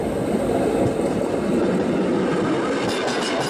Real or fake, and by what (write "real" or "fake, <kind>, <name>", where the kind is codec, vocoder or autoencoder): real